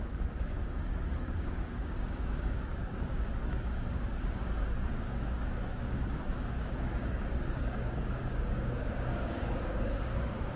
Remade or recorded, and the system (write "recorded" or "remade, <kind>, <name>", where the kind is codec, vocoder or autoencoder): remade, codec, DAC